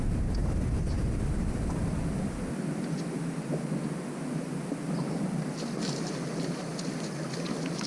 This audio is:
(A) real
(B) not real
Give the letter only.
A